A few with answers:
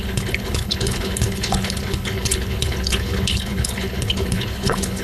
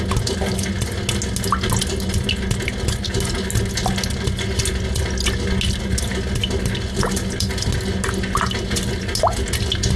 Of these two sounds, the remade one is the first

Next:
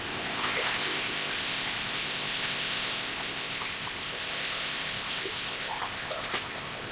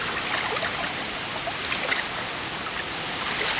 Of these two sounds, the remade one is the first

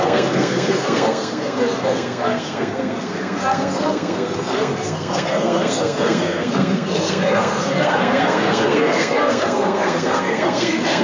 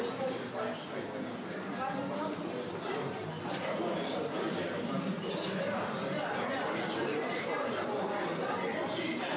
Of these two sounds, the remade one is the first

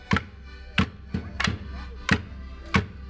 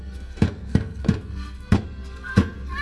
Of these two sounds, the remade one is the second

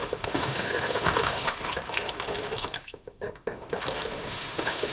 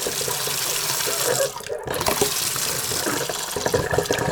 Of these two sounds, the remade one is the first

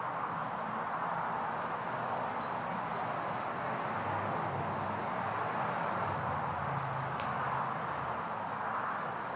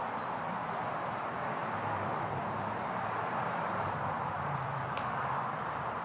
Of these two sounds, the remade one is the second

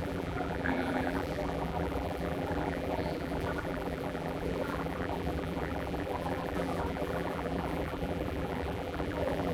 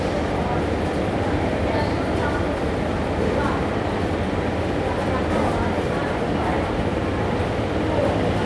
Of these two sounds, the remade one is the first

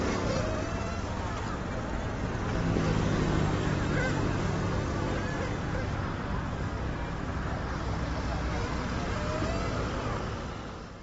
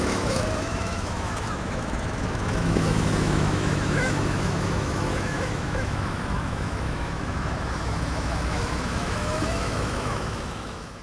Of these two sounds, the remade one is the second